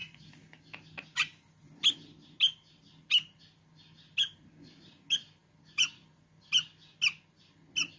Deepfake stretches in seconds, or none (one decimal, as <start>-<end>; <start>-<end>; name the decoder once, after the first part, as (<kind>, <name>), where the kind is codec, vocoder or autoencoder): none